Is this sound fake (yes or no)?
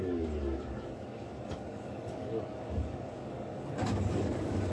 yes